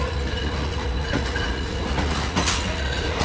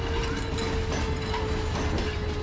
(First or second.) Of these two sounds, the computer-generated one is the first